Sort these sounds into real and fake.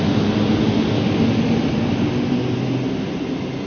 real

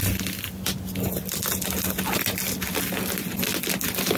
real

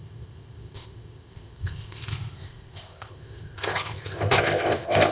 fake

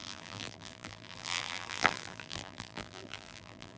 fake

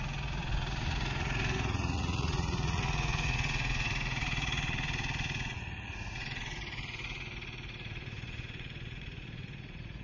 fake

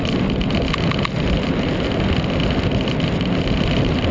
real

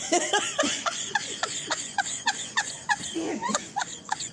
fake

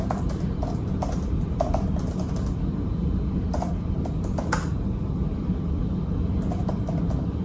real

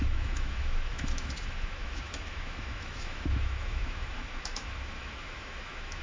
fake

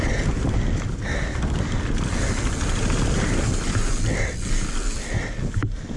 real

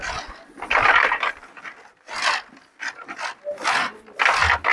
real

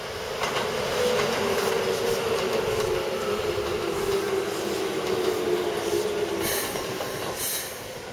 real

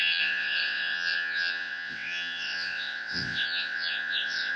fake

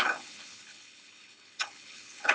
fake